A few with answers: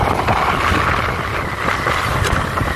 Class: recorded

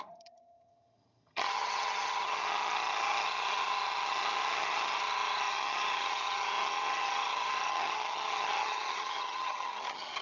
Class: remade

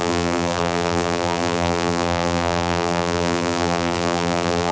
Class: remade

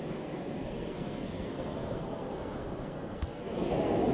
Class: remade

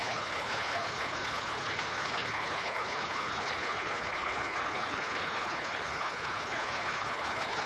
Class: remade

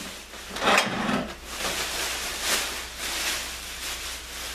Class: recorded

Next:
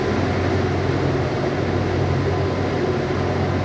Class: recorded